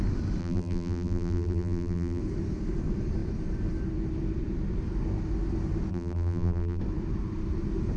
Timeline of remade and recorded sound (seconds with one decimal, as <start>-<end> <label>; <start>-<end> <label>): 0.0-0.4 recorded; 0.4-2.2 remade; 2.2-5.9 recorded; 5.9-6.8 remade; 6.8-8.0 recorded

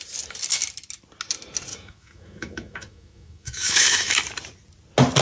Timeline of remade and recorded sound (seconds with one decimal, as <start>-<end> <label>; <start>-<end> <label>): 0.0-1.7 recorded; 1.7-4.2 remade; 4.2-5.2 recorded

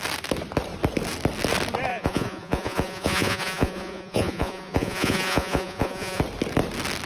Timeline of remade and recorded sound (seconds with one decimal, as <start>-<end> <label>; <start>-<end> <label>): 0.0-1.9 recorded; 1.9-6.2 remade; 6.2-7.1 recorded

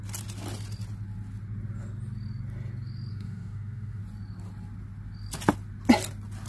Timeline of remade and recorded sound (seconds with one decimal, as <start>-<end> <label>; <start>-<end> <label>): 0.0-3.1 recorded; 3.1-4.0 remade; 4.0-6.5 recorded

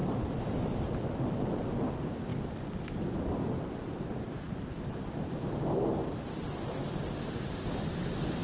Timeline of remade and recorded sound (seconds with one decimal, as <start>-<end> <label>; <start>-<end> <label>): 0.0-1.9 remade; 1.9-2.3 recorded; 2.3-5.3 remade; 5.3-8.4 recorded